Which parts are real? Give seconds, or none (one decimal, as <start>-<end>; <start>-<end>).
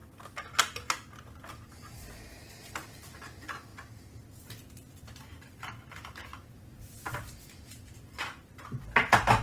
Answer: 0.0-1.2; 3.7-5.0; 8.5-9.4